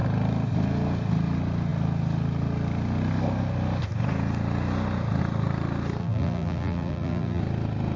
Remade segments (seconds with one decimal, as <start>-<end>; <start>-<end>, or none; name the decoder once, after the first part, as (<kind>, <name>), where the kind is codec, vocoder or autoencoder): 6.0-7.4 (vocoder, BigVGAN v2)